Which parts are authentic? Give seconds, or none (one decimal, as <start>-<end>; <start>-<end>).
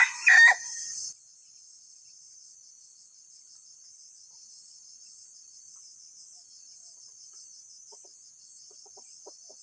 0.0-9.6